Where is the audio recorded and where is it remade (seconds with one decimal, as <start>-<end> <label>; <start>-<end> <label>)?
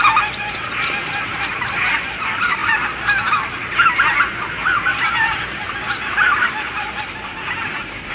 0.0-1.3 recorded; 1.3-1.9 remade; 1.9-2.6 recorded; 2.6-3.4 remade; 3.4-4.9 recorded; 4.9-5.7 remade; 5.7-8.1 recorded